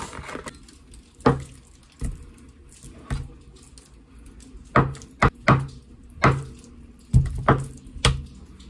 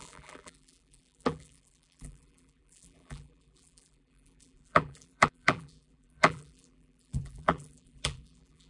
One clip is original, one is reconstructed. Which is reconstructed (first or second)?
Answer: second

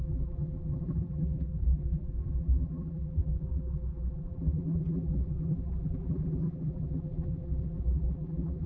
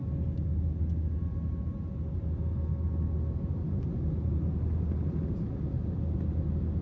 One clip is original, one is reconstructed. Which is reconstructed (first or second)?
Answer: first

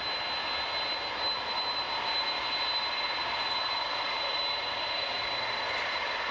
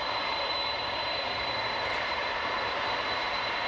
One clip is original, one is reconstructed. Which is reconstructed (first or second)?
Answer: second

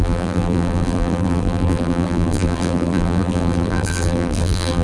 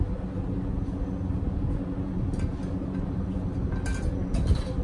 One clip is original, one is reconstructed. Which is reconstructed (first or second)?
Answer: first